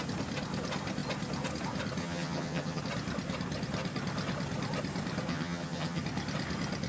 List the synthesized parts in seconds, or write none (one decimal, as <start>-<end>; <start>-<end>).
2.0-2.8; 5.3-6.0